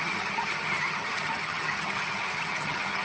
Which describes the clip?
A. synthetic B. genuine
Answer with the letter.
A